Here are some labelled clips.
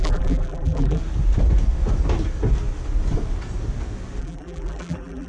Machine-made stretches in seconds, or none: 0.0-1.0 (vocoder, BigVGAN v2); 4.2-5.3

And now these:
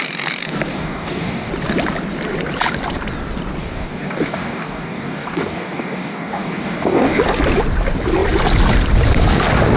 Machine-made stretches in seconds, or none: 0.7-1.5 (codec, DAC); 3.6-7.2

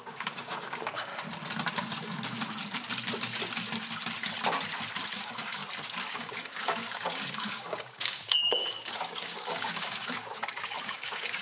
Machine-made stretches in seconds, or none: 0.0-1.1 (codec, DAC); 5.1-5.6; 6.1-11.4

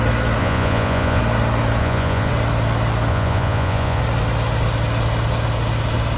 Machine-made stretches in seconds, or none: 0.4-1.2 (vocoder, Vocos); 1.8-2.3; 3.1-4.0

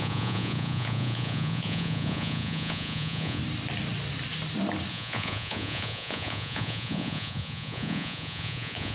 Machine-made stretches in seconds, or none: 0.0-3.4 (vocoder, Vocos); 4.9-8.9